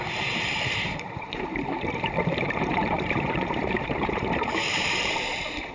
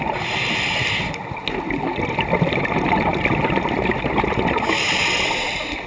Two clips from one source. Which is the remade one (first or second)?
first